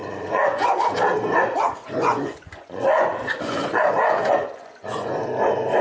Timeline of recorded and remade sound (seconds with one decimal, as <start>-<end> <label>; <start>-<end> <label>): 0.0-0.8 remade; 0.8-1.8 recorded; 1.8-5.1 remade; 5.1-5.8 recorded

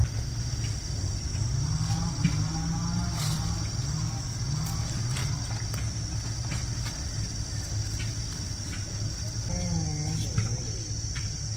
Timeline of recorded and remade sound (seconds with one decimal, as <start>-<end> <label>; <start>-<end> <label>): 0.0-11.6 recorded

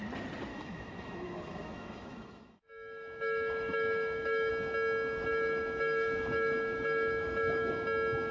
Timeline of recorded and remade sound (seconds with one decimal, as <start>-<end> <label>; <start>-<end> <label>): 0.0-0.5 recorded; 0.5-4.5 remade; 4.5-5.3 recorded; 5.3-7.7 remade; 7.7-8.3 recorded

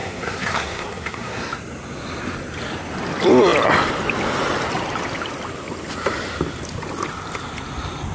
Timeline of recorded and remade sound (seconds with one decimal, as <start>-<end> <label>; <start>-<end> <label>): 0.0-1.4 remade; 1.4-8.1 recorded

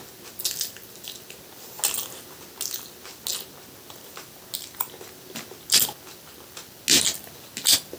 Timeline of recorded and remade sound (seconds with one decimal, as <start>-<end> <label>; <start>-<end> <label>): 0.0-8.0 recorded

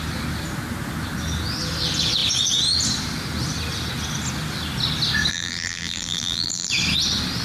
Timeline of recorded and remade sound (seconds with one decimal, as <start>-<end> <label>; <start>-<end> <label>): 0.0-5.3 recorded; 5.3-6.7 remade; 6.7-7.4 recorded

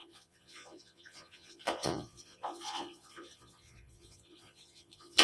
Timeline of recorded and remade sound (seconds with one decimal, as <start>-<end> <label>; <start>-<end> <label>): 0.0-5.2 remade